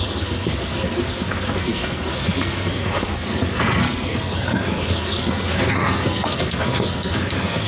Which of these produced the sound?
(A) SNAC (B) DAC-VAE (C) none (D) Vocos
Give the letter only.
A